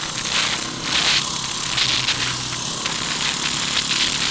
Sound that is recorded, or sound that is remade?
recorded